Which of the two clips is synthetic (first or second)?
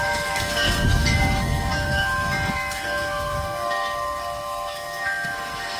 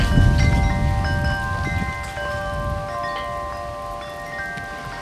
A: first